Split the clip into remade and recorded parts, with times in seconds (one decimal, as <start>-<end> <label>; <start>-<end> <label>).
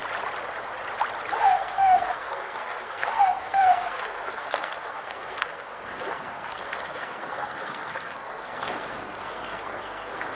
0.0-1.4 recorded; 1.4-10.3 remade